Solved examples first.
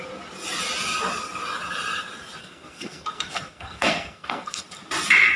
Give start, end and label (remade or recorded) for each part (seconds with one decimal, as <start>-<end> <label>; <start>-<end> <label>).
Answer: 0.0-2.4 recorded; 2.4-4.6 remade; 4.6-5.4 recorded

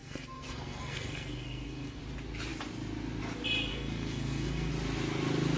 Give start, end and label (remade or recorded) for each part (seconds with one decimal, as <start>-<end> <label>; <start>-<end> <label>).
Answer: 0.0-2.0 remade; 2.0-3.7 recorded; 3.7-4.7 remade; 4.7-5.6 recorded

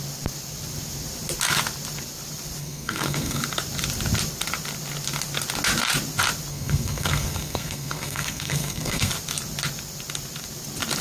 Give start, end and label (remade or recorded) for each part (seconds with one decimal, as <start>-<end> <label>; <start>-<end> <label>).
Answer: 0.0-2.6 recorded; 2.6-3.4 remade; 3.4-6.5 recorded; 6.5-9.1 remade; 9.1-11.0 recorded

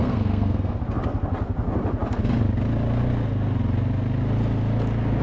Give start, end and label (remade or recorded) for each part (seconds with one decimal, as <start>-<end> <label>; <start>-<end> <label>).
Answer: 0.0-0.8 remade; 0.8-5.2 recorded